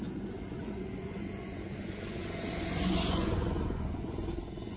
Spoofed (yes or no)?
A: yes